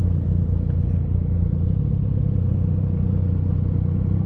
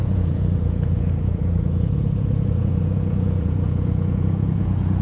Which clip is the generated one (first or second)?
second